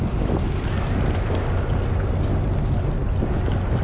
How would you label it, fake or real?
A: real